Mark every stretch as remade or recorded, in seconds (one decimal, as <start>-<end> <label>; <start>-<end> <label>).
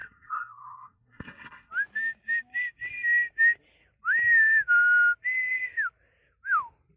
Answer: 0.0-1.7 remade; 1.7-7.0 recorded